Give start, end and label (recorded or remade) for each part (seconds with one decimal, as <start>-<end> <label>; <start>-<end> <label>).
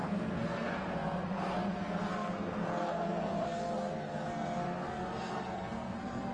0.0-6.3 remade